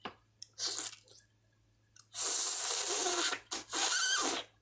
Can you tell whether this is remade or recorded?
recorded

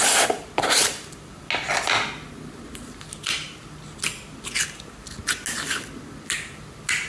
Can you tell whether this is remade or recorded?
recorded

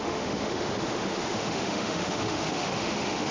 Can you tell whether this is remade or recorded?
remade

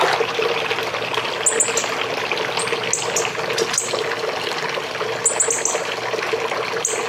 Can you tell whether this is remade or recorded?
recorded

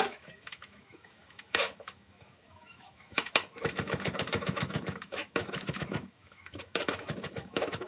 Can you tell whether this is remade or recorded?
remade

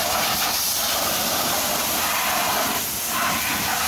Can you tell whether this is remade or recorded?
recorded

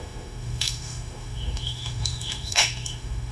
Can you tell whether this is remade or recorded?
remade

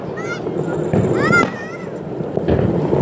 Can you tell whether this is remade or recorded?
recorded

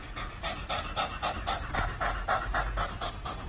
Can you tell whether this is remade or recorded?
recorded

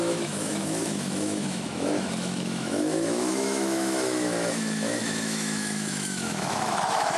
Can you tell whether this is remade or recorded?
remade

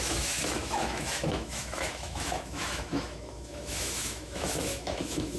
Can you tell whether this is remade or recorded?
remade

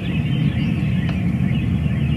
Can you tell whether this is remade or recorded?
recorded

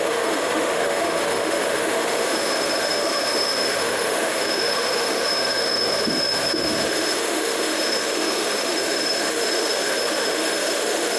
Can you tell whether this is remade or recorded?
remade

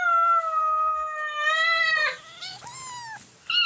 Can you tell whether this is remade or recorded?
recorded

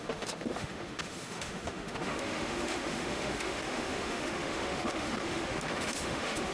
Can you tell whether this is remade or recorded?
remade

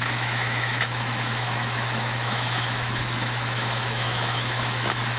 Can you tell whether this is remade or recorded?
remade